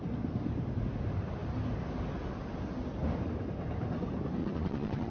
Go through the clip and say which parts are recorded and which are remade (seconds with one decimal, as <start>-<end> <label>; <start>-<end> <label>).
0.0-4.4 recorded; 4.4-5.1 remade

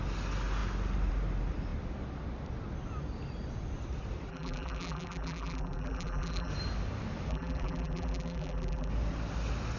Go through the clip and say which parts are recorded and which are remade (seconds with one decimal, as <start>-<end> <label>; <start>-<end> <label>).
0.0-4.3 recorded; 4.3-6.5 remade; 6.5-7.3 recorded; 7.3-8.9 remade; 8.9-9.8 recorded

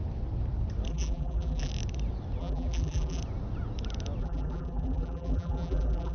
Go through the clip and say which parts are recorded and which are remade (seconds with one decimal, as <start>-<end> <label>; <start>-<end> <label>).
0.0-0.9 recorded; 0.9-1.7 remade; 1.7-2.4 recorded; 2.4-3.2 remade; 3.2-4.2 recorded; 4.2-6.1 remade